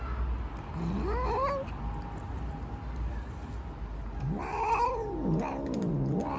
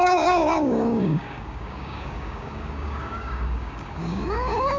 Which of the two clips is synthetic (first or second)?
second